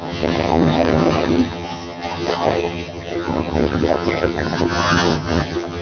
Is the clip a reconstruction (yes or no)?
yes